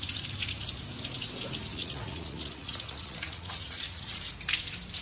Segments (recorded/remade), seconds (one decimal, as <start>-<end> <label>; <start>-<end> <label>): 0.0-1.7 recorded; 1.7-4.2 remade; 4.2-5.0 recorded